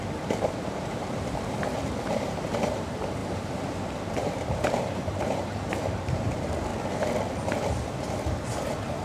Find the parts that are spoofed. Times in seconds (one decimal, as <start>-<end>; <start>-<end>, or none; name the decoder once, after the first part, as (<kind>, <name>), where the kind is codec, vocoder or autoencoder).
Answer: 0.0-6.7 (vocoder, BigVGAN v2); 8.2-9.0